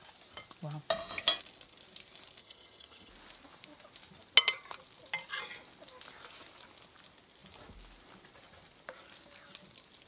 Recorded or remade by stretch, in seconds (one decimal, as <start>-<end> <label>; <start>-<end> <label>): 0.0-2.4 recorded; 2.4-3.1 remade; 3.1-10.1 recorded

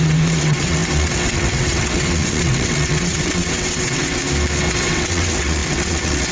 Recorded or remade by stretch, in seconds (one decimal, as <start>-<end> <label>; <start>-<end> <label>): 0.0-4.2 remade; 4.2-4.7 recorded; 4.7-6.3 remade

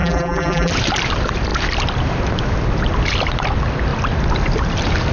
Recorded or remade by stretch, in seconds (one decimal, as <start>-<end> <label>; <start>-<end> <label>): 0.0-0.7 remade; 0.7-5.1 recorded

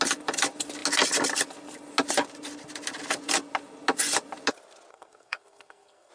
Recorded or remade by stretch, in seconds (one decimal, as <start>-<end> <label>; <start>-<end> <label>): 0.0-4.9 recorded; 4.9-6.1 remade

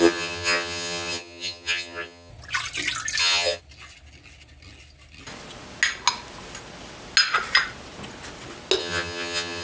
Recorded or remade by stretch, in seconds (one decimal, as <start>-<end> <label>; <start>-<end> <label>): 0.0-2.3 remade; 2.3-3.2 recorded; 3.2-3.6 remade; 3.6-8.8 recorded; 8.8-9.6 remade